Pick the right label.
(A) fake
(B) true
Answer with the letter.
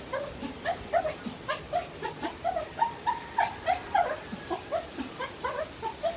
A